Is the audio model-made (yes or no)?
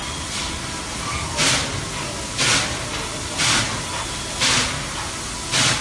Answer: no